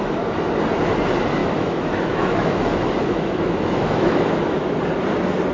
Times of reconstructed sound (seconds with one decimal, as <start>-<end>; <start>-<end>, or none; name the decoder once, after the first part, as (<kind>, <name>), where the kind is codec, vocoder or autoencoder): 1.4-4.7 (autoencoder, DAC-VAE)